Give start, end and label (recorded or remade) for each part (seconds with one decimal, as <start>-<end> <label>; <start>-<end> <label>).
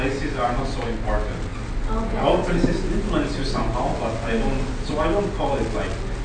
0.0-6.2 recorded